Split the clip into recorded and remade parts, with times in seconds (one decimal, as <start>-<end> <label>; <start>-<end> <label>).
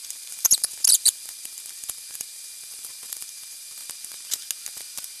0.0-3.8 remade; 3.8-5.2 recorded